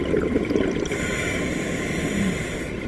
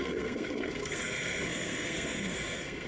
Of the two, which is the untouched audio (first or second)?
first